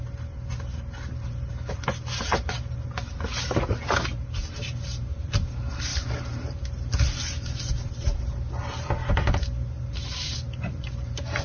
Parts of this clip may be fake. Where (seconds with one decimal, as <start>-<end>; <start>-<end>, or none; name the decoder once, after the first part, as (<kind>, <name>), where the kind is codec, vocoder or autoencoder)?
none